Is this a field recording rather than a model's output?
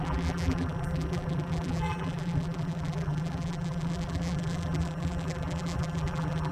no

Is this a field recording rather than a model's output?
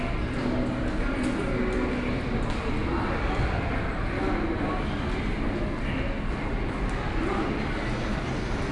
yes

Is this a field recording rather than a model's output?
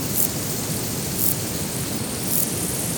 yes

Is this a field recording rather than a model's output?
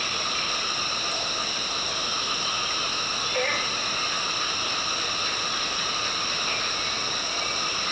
yes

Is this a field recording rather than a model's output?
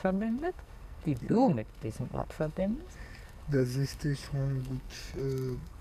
no